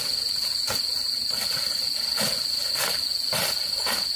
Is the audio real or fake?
real